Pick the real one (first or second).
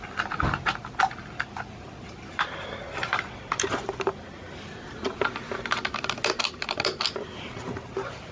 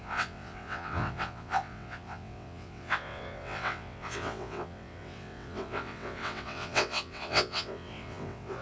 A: first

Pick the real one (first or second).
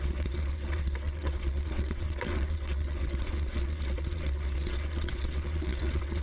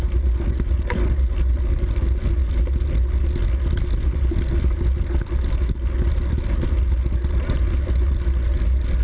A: second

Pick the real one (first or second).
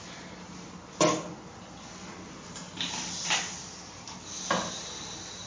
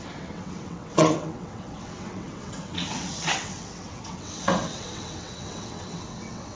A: first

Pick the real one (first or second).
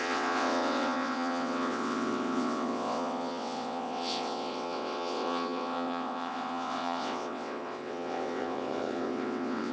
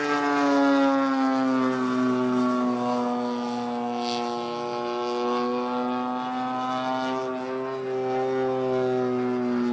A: second